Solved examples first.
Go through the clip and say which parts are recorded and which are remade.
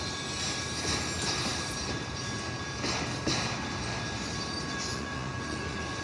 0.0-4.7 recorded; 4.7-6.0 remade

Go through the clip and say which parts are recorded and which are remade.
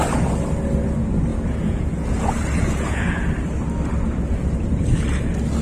0.0-1.3 recorded; 1.3-3.2 remade; 3.2-5.6 recorded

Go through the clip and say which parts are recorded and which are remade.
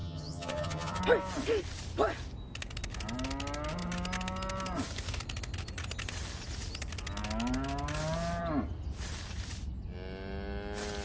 0.0-1.0 remade; 1.0-11.0 recorded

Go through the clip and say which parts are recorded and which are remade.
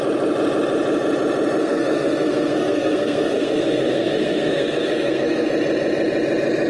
0.0-1.6 recorded; 1.6-5.5 remade; 5.5-6.7 recorded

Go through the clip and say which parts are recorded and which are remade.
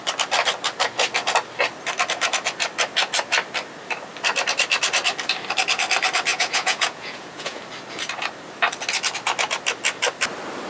0.0-6.3 recorded; 6.3-7.6 remade; 7.6-10.7 recorded